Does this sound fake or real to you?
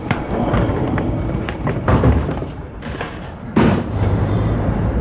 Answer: fake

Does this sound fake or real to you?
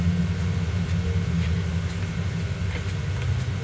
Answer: real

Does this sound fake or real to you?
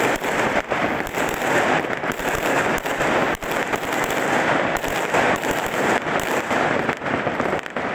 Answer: real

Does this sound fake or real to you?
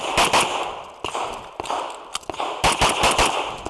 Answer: real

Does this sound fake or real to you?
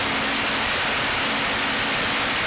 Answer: real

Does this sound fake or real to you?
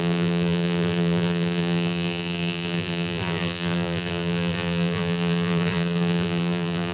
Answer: fake